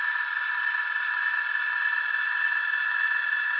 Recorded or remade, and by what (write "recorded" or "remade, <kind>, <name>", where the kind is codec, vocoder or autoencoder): remade, vocoder, BigVGAN v2